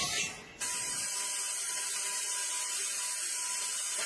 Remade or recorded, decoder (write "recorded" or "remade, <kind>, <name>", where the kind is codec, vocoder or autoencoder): recorded